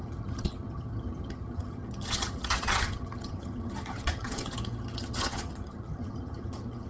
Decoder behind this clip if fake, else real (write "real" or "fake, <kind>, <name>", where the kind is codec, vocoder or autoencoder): fake, vocoder, HiFi-GAN